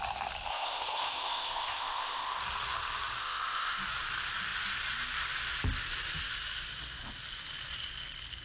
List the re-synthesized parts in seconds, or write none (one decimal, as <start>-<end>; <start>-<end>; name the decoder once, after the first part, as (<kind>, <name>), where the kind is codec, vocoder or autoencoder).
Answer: 0.5-2.4 (codec, ZipCodec); 3.2-3.8